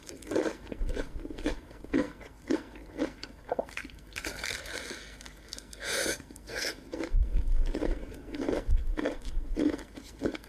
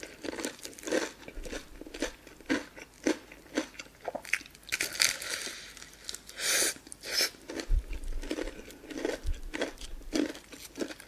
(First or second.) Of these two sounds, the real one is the second